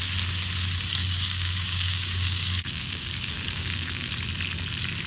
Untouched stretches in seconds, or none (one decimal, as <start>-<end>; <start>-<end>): 0.0-1.0; 4.1-5.1